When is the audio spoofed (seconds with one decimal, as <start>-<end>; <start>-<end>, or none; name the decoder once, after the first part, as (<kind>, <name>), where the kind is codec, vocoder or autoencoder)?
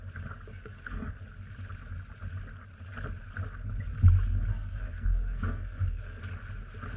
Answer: 0.5-1.1 (codec, SNAC); 4.5-6.2